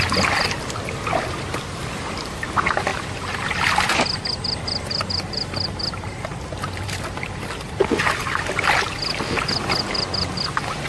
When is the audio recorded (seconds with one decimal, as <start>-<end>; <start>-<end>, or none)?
7.8-10.4